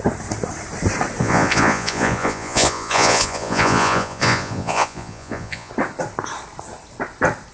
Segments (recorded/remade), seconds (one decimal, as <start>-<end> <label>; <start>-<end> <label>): 0.0-1.2 recorded; 1.2-5.7 remade; 5.7-7.5 recorded

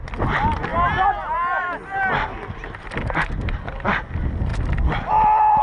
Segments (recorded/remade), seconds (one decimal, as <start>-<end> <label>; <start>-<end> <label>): 0.0-5.6 recorded

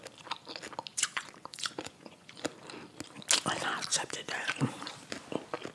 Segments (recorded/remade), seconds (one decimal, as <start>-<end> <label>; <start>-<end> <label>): 0.0-0.9 recorded; 0.9-2.4 remade; 2.4-3.9 recorded; 3.9-4.9 remade; 4.9-5.7 recorded

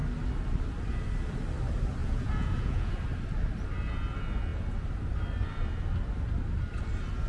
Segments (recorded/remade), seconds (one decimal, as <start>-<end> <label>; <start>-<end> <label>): 0.0-2.0 recorded; 2.0-2.9 remade; 2.9-7.3 recorded

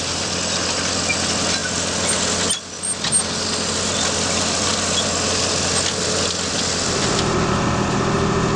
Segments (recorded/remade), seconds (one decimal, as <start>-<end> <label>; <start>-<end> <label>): 0.0-8.6 recorded

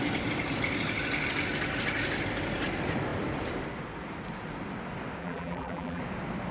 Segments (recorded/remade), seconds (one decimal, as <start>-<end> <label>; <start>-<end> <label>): 0.0-5.2 recorded; 5.2-6.0 remade; 6.0-6.5 recorded

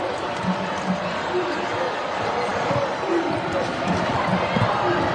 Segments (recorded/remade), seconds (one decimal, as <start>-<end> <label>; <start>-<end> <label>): 0.0-5.1 recorded